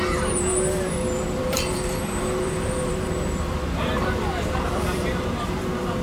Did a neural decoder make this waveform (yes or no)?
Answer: yes